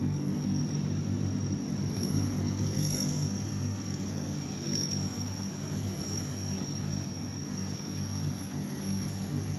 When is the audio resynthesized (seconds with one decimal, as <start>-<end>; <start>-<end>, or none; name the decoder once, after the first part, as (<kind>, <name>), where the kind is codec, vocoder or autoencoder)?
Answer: 0.0-0.6 (codec, SNAC); 1.9-9.6